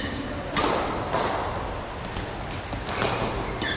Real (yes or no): yes